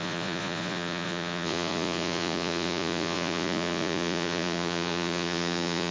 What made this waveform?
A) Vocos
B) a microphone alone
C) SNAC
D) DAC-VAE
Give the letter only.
A